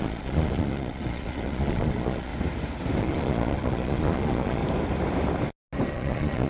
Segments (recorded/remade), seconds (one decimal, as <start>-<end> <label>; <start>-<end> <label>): 0.0-2.3 remade; 2.3-3.0 recorded; 3.0-4.6 remade; 4.6-5.9 recorded; 5.9-6.5 remade